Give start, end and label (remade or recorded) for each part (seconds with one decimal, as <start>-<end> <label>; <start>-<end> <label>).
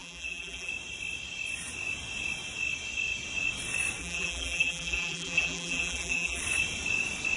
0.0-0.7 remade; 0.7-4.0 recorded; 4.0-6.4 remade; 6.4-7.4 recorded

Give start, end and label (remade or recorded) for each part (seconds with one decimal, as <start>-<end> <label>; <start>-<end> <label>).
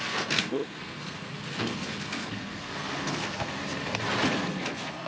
0.0-3.6 remade; 3.6-4.3 recorded; 4.3-5.1 remade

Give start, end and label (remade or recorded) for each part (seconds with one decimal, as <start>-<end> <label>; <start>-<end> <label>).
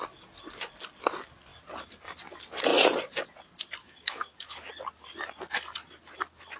0.0-3.8 recorded; 3.8-4.7 remade; 4.7-6.6 recorded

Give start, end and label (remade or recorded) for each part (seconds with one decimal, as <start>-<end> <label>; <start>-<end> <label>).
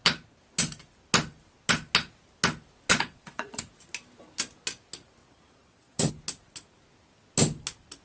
0.0-2.9 recorded; 2.9-3.6 remade; 3.6-5.2 recorded; 5.2-6.1 remade; 6.1-8.0 recorded